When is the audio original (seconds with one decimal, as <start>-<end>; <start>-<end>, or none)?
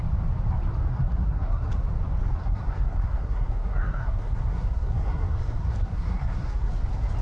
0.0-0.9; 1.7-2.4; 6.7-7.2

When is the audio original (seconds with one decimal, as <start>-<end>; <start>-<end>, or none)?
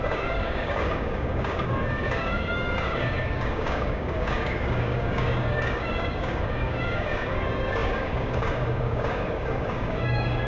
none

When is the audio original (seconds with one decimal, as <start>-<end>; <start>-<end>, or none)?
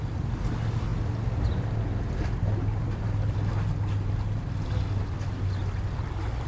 0.0-6.5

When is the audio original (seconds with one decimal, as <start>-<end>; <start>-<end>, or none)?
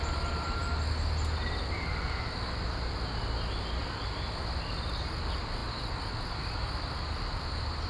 0.0-7.9